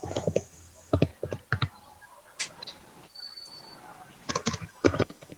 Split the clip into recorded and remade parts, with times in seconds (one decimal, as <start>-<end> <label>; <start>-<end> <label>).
0.0-1.1 remade; 1.1-4.3 recorded; 4.3-5.4 remade